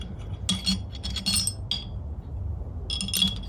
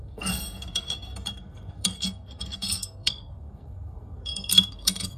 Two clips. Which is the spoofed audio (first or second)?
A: second